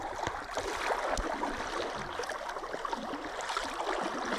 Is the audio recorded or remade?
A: recorded